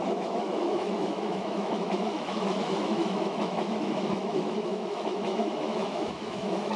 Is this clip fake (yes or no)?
yes